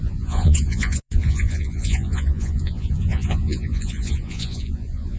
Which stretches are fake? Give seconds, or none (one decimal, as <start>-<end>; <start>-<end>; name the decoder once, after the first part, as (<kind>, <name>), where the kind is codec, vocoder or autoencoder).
0.0-5.2 (vocoder, Vocos)